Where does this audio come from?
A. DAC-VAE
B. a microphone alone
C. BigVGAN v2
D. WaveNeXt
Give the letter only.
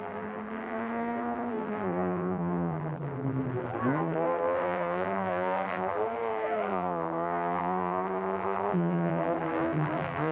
C